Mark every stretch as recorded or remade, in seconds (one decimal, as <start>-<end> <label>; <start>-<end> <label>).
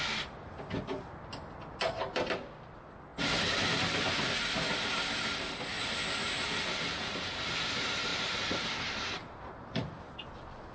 0.0-8.1 recorded; 8.1-10.0 remade; 10.0-10.7 recorded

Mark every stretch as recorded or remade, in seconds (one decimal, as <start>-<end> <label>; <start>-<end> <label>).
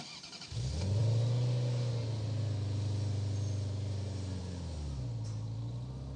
0.0-6.2 recorded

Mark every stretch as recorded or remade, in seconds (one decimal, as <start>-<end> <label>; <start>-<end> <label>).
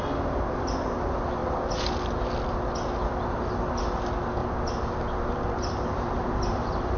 0.0-4.4 recorded; 4.4-7.0 remade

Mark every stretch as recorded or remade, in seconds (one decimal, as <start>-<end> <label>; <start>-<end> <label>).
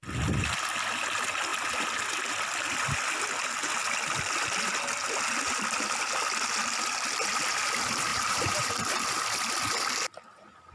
0.0-8.1 recorded; 8.1-8.7 remade; 8.7-10.7 recorded